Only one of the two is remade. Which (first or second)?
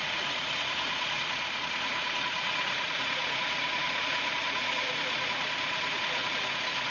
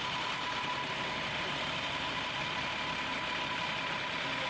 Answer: first